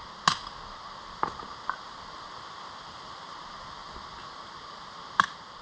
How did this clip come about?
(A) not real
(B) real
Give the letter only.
B